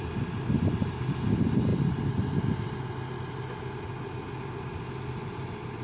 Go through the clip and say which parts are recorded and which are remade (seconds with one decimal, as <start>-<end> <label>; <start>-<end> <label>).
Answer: 0.0-5.8 recorded